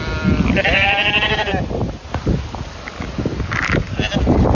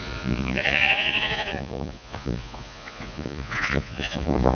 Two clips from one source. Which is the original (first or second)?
first